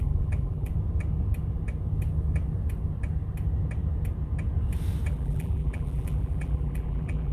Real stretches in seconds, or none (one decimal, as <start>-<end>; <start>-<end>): 0.7-5.1